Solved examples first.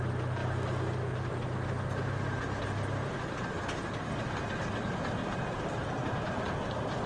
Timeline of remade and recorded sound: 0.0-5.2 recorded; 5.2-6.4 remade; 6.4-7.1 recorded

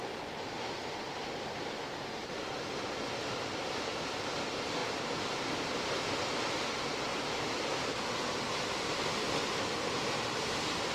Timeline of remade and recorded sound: 0.0-4.8 recorded; 4.8-5.9 remade; 5.9-7.1 recorded; 7.1-8.1 remade; 8.1-10.9 recorded

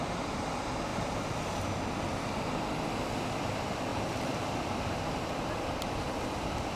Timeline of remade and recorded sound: 0.0-0.9 recorded; 0.9-2.4 remade; 2.4-3.9 recorded; 3.9-5.9 remade; 5.9-6.8 recorded

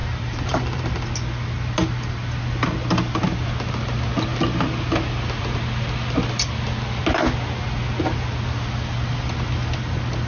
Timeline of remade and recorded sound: 0.0-0.9 remade; 0.9-10.3 recorded

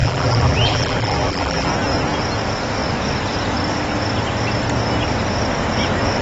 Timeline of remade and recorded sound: 0.0-1.7 remade; 1.7-6.2 recorded